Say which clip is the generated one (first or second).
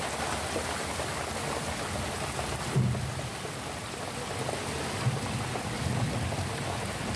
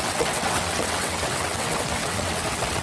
second